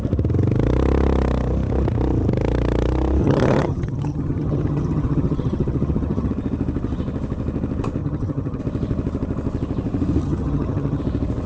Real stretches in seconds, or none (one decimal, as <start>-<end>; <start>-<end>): 0.0-3.2; 6.3-8.0; 8.6-10.2; 11.0-11.5